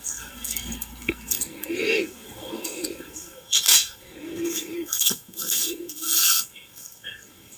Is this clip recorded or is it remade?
remade